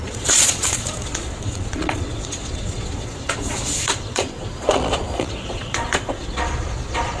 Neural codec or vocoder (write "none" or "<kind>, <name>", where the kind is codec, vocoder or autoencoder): vocoder, Vocos